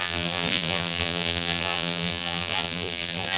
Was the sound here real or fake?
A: fake